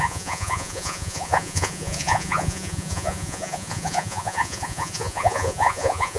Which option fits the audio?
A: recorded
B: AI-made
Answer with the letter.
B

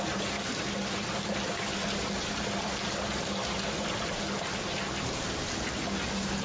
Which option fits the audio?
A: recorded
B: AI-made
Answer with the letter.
A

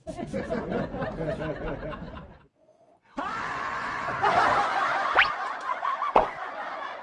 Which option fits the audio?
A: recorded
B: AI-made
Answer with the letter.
B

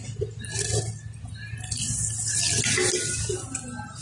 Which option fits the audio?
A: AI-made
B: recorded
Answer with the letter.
B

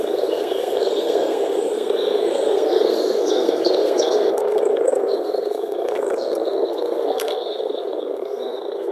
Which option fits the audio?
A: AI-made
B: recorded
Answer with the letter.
A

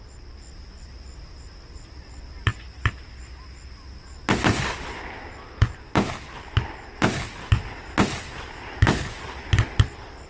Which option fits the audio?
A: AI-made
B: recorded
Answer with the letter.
B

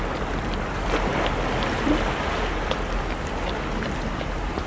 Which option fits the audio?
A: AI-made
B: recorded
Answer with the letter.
B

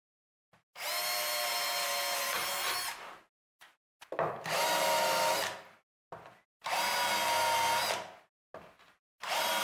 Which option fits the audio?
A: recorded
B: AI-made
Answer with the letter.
A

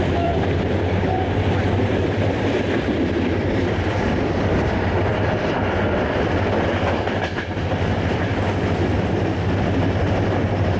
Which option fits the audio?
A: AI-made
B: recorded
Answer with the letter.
A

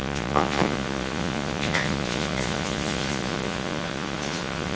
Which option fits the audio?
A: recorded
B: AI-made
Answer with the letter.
B